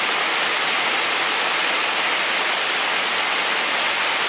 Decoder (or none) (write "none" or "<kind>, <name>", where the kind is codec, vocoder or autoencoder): none